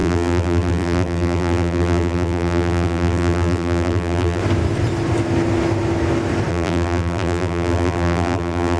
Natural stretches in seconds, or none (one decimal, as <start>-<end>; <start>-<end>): 4.4-6.5